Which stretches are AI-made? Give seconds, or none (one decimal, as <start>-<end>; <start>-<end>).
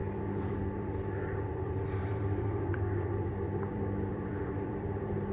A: 0.0-5.3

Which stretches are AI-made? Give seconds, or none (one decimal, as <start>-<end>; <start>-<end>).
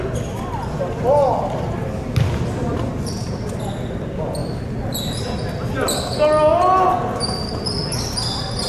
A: 4.4-5.0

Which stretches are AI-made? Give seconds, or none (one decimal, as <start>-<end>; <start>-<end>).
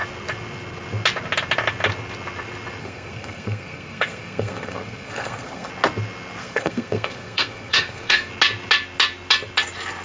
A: 2.8-5.7; 6.4-8.3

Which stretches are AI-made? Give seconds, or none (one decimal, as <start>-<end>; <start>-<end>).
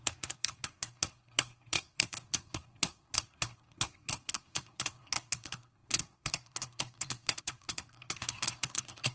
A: 0.0-9.1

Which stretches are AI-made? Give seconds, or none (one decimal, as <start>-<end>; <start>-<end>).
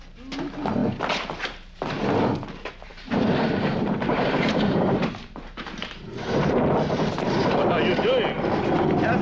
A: 2.9-7.4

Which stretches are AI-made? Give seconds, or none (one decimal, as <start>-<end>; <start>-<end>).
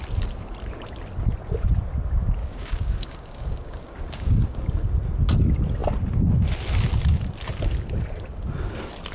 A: 2.4-4.9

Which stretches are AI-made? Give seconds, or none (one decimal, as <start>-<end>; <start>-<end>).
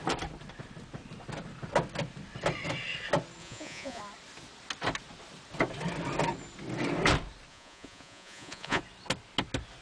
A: 3.4-4.0; 7.5-8.8